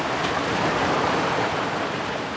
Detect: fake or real fake